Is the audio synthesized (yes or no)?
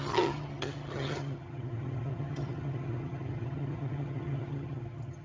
yes